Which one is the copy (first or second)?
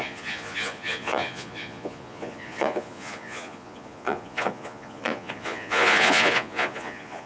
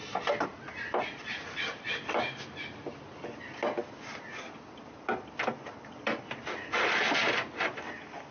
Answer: first